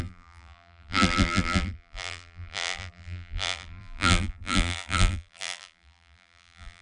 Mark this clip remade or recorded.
remade